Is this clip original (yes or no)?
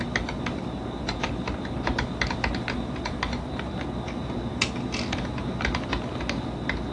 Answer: yes